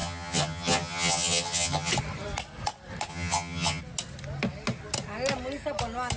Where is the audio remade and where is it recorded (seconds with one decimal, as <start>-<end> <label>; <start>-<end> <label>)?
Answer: 0.0-1.9 remade; 1.9-3.1 recorded; 3.1-3.8 remade; 3.8-6.2 recorded

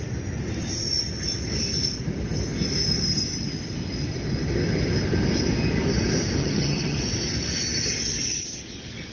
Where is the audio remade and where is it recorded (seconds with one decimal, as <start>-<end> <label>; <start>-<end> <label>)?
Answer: 0.0-6.4 recorded; 6.4-7.0 remade; 7.0-9.1 recorded